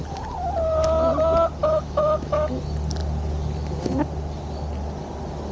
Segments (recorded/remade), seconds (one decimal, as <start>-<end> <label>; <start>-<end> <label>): 0.0-1.6 recorded; 1.6-2.6 remade; 2.6-5.5 recorded